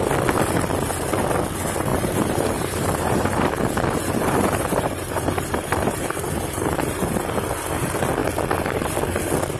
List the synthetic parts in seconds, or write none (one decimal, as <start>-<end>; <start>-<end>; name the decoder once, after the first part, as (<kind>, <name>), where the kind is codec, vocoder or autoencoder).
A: 1.9-7.1 (vocoder, BigVGAN v2)